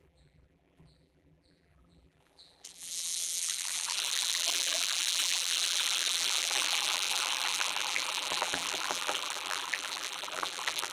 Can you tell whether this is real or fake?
fake